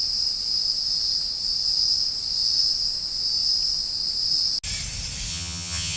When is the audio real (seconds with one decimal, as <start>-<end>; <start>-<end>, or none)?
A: 0.0-5.3